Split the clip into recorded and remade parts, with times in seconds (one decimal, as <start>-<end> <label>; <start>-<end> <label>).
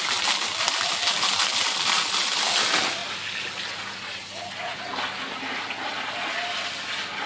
0.0-7.3 recorded